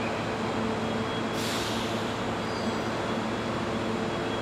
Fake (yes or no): no